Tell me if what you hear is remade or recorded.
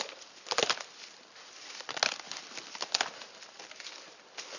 recorded